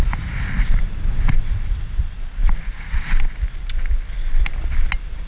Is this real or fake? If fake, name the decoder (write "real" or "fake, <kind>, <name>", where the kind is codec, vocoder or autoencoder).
real